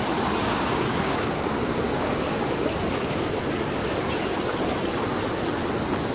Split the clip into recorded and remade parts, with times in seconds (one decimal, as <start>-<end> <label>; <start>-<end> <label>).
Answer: 0.0-0.4 recorded; 0.4-3.4 remade; 3.4-6.1 recorded